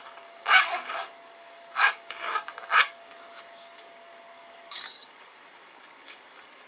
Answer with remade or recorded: remade